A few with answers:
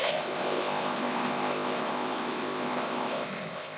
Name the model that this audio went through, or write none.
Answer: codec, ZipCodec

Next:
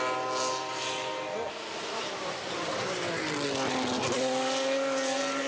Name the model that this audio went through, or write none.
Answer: none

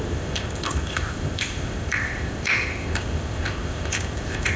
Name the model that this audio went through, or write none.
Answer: codec, ZipCodec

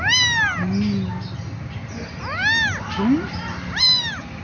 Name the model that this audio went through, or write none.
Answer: none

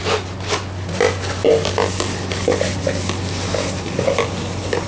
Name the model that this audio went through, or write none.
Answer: none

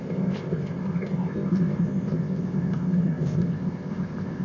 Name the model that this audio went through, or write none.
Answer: codec, ZipCodec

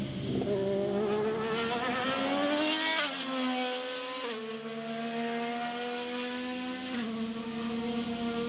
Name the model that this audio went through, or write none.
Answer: none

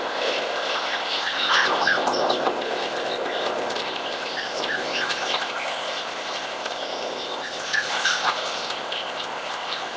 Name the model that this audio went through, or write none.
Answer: codec, ZipCodec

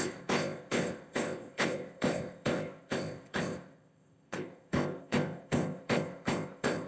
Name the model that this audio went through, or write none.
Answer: codec, ZipCodec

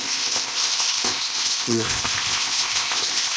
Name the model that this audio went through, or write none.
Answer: codec, ZipCodec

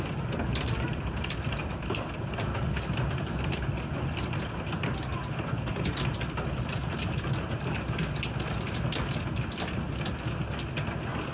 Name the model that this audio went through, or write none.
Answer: none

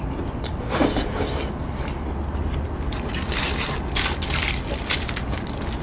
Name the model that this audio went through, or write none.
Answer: none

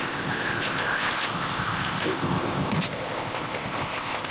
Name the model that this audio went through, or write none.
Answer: codec, ZipCodec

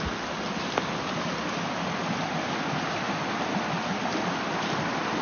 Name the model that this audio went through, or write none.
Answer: none